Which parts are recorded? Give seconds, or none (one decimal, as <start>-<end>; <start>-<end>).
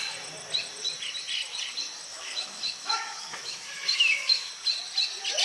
0.0-2.1; 4.5-5.4